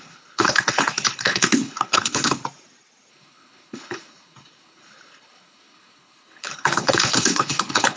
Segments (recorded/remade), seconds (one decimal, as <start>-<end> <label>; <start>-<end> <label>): 0.0-2.4 remade; 2.4-3.1 recorded; 3.1-8.0 remade